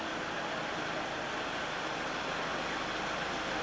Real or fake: real